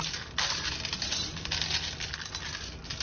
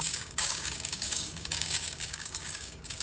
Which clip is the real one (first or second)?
first